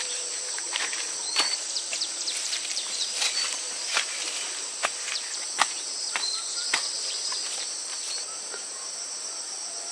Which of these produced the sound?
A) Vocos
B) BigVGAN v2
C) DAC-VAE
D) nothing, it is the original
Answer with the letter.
B